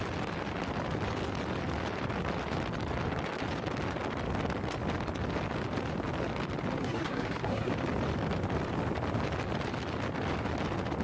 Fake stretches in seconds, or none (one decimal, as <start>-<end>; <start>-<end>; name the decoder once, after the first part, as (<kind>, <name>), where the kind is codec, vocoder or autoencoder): 6.8-7.7 (codec, SNAC)